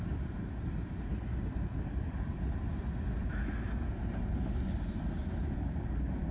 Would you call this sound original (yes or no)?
yes